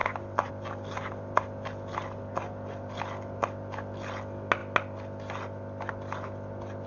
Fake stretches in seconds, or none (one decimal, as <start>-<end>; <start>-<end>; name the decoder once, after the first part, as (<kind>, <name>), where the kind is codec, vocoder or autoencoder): none

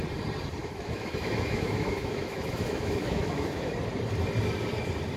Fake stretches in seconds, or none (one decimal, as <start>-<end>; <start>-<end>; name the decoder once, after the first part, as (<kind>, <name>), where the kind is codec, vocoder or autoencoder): 0.6-3.7 (autoencoder, DAC-VAE)

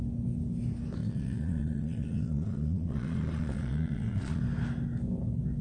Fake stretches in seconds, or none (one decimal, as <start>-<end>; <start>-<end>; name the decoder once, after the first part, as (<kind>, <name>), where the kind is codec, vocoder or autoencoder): 1.0-4.4 (vocoder, Vocos)